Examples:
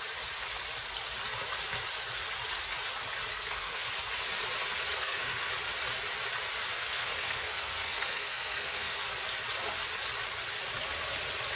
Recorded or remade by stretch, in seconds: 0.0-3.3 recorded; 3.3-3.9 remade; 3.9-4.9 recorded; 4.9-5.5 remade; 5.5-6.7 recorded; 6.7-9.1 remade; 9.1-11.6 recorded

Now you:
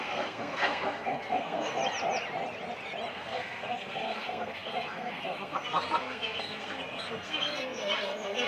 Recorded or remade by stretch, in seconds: 0.0-1.8 remade; 1.8-3.1 recorded; 3.1-8.5 remade

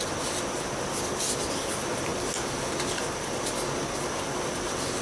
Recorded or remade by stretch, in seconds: 0.0-5.0 recorded

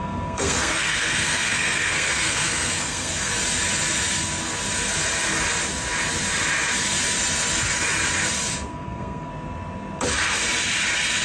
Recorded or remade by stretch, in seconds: 0.0-3.3 remade; 3.3-8.7 recorded; 8.7-9.3 remade; 9.3-11.2 recorded